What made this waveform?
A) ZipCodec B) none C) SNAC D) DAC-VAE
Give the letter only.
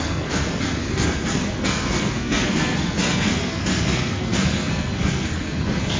C